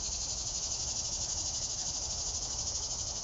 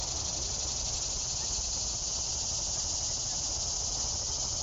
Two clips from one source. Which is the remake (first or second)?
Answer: first